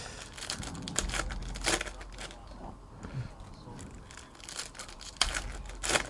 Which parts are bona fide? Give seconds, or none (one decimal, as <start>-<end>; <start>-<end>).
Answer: 0.0-6.1